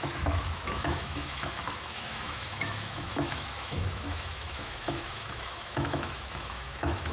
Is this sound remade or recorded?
remade